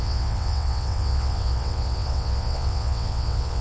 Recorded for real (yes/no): no